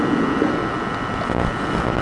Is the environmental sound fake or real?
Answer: real